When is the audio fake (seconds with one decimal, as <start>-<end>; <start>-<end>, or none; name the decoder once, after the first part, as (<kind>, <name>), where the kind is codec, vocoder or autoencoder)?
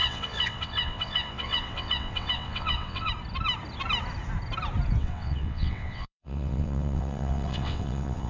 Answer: 0.0-3.1 (vocoder, WaveNeXt); 5.0-8.3